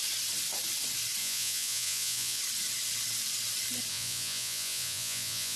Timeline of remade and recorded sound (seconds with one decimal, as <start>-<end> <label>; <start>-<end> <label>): 0.0-1.2 recorded; 1.2-2.4 remade; 2.4-3.9 recorded; 3.9-5.6 remade